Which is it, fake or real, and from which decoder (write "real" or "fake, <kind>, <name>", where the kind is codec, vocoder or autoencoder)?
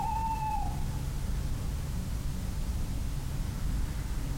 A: real